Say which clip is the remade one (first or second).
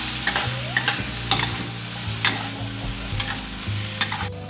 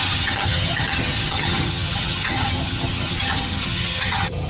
second